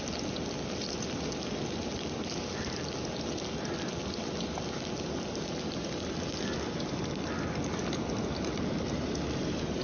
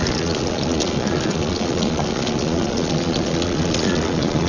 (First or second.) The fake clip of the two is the second